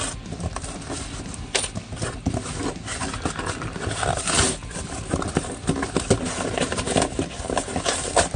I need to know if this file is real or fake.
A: real